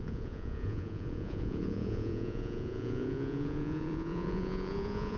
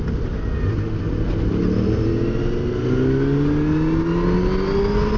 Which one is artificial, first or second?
first